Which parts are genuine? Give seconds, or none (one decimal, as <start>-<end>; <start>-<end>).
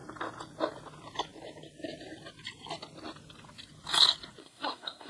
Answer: 0.0-4.4